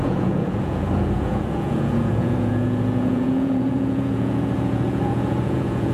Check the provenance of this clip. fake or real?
fake